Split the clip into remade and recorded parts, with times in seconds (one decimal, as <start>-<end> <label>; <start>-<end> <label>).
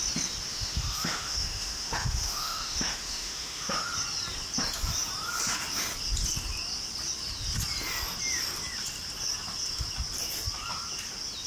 0.0-0.5 recorded; 0.5-3.9 remade; 3.9-11.5 recorded